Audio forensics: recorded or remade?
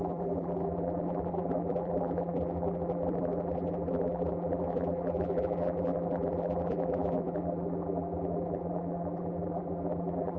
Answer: remade